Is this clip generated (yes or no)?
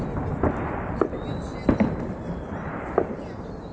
no